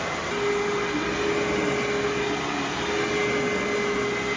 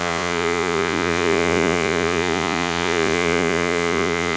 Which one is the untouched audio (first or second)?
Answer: first